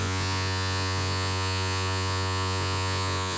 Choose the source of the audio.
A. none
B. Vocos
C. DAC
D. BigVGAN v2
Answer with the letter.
B